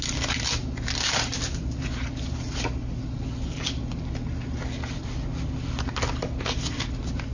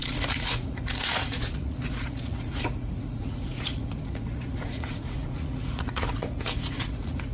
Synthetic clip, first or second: second